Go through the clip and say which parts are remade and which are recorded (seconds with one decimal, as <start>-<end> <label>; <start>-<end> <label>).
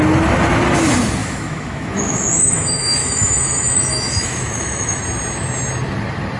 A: 0.0-1.2 recorded; 1.2-5.0 remade; 5.0-6.4 recorded